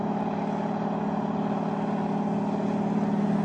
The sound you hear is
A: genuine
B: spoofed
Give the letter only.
A